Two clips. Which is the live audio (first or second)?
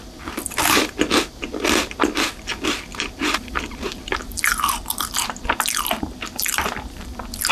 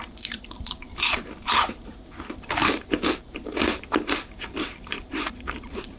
first